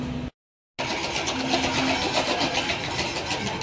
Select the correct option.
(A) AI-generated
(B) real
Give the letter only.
B